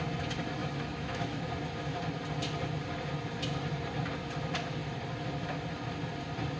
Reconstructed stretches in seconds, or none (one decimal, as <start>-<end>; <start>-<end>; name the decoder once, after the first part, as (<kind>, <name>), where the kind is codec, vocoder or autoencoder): 0.6-1.5 (autoencoder, DAC-VAE)